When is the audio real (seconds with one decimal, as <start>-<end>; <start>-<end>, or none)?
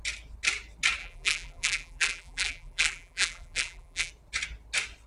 0.0-1.0; 4.1-5.1